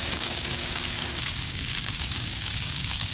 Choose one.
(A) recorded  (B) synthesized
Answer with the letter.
B